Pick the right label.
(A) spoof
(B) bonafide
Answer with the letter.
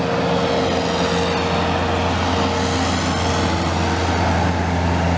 B